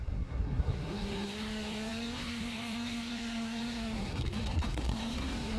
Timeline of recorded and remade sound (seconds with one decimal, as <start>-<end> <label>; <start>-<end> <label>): 0.0-5.6 remade